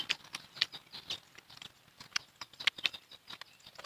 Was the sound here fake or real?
real